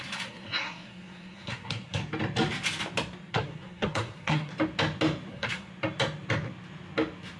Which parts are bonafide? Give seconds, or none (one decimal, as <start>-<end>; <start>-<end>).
2.0-3.3; 4.5-5.3; 5.7-7.4